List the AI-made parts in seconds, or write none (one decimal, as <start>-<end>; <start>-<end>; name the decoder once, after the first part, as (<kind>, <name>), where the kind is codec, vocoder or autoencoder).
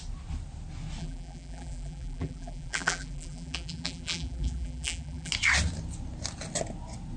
1.0-5.3 (vocoder, BigVGAN v2)